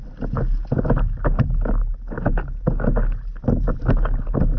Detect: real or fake real